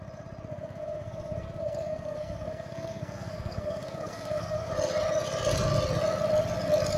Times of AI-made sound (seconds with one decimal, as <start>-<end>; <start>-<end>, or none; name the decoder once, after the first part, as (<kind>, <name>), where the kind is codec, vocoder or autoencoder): 0.5-4.7 (codec, SNAC)